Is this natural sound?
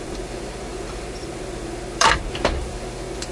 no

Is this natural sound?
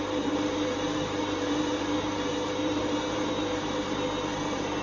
no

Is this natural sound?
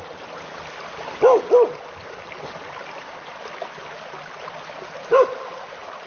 yes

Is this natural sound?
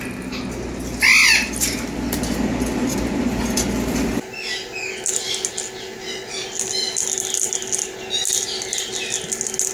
yes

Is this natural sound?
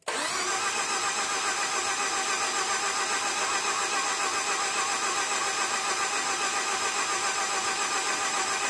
yes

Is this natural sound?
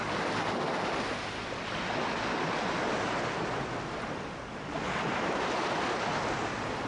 yes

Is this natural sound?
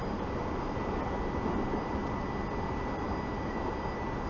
yes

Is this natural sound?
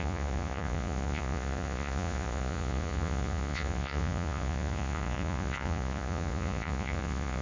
no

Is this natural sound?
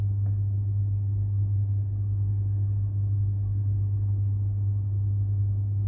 yes